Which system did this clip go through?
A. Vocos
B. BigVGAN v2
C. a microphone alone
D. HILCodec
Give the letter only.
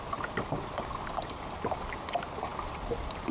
C